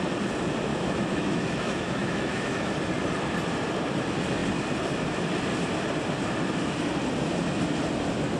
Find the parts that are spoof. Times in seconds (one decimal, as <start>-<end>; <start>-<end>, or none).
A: 0.7-2.7